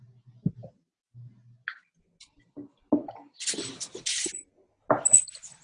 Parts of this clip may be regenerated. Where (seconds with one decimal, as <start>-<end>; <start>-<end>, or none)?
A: none